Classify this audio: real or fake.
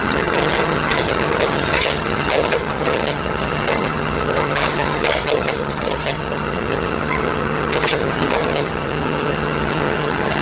fake